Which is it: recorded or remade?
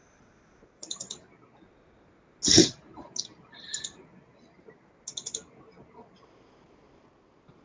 recorded